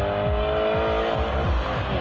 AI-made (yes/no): no